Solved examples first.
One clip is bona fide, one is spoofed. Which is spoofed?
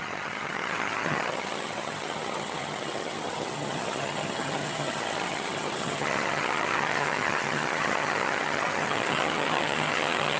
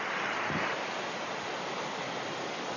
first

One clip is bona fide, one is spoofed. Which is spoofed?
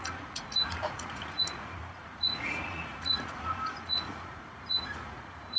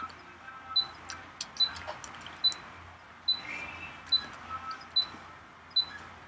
first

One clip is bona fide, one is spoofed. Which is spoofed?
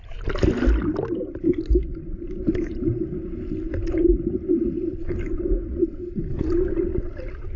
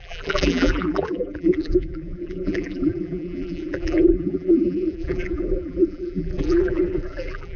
second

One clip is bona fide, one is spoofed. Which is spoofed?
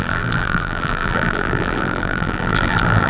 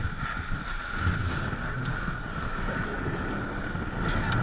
first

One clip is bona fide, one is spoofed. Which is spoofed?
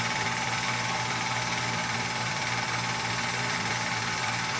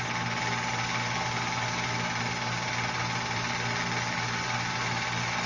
first